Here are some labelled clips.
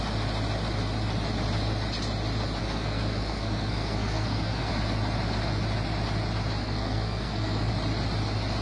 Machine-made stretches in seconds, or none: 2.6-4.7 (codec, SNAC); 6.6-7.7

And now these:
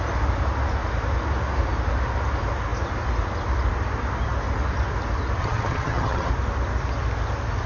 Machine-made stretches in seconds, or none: 5.4-6.3 (vocoder, HiFi-GAN)